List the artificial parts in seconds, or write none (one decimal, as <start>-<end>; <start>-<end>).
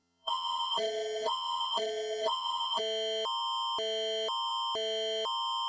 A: 0.0-2.8